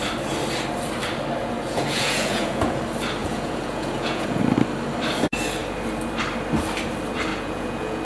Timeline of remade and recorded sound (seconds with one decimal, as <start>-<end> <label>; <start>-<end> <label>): 0.0-1.4 recorded; 1.4-2.8 remade; 2.8-3.2 recorded; 3.2-4.4 remade; 4.4-7.3 recorded; 7.3-8.0 remade